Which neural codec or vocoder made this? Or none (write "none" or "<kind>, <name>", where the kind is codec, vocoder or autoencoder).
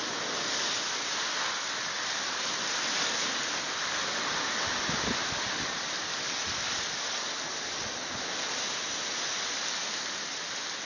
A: none